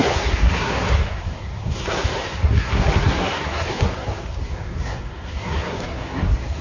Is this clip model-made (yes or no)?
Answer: yes